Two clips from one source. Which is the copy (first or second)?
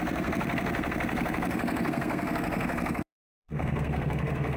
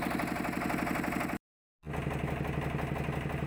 first